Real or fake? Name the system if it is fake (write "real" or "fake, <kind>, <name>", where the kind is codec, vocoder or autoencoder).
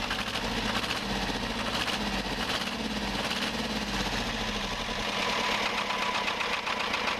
real